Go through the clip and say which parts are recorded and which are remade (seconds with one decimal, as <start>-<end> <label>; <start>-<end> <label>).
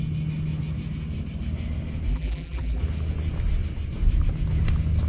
0.0-2.1 recorded; 2.1-2.8 remade; 2.8-5.1 recorded